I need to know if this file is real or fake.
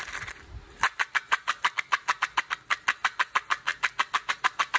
real